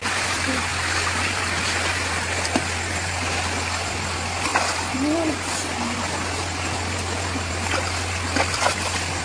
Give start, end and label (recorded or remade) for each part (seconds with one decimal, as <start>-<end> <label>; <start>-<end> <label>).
0.0-0.7 remade; 0.7-1.2 recorded; 1.2-4.5 remade; 4.5-7.5 recorded; 7.5-9.2 remade

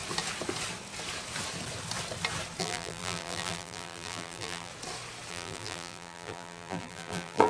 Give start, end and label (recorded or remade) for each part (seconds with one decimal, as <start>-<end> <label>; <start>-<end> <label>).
0.0-2.6 recorded; 2.6-4.7 remade; 4.7-5.3 recorded; 5.3-7.5 remade

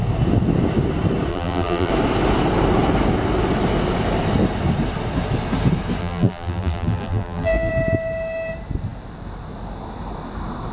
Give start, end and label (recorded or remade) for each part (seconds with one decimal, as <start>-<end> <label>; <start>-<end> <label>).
0.0-1.3 recorded; 1.3-1.9 remade; 1.9-6.0 recorded; 6.0-7.7 remade; 7.7-10.7 recorded

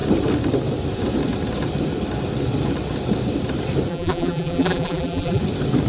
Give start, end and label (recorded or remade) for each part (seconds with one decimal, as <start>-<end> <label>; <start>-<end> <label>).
0.0-3.9 recorded; 3.9-5.4 remade; 5.4-5.9 recorded

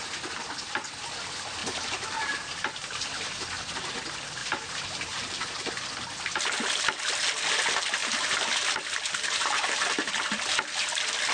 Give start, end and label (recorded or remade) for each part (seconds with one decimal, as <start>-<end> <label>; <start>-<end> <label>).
0.0-1.6 recorded; 1.6-3.4 remade; 3.4-4.4 recorded; 4.4-5.7 remade; 5.7-8.0 recorded; 8.0-10.1 remade; 10.1-11.3 recorded

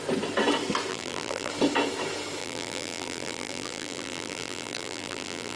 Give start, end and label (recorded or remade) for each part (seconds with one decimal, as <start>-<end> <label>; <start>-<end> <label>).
0.0-0.9 recorded; 0.9-1.5 remade; 1.5-2.4 recorded; 2.4-5.6 remade